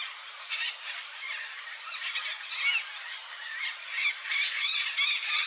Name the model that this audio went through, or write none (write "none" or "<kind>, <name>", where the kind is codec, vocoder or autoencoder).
none